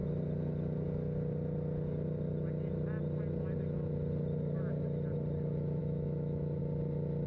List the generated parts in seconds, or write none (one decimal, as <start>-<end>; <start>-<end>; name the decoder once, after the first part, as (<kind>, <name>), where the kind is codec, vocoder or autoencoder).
5.8-6.6 (autoencoder, DAC-VAE)